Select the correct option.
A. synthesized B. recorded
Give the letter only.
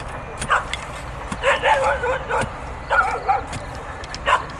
B